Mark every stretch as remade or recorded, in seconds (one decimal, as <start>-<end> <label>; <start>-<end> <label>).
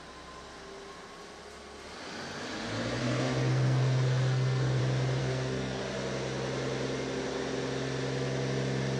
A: 0.0-3.0 recorded; 3.0-4.8 remade; 4.8-5.2 recorded; 5.2-5.8 remade; 5.8-9.0 recorded